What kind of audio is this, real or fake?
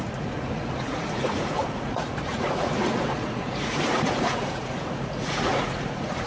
fake